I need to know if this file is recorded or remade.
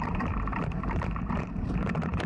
remade